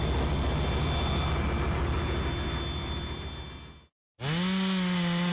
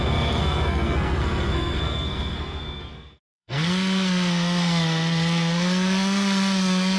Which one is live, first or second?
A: first